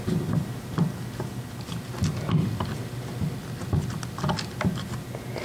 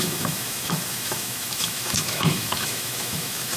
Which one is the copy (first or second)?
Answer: second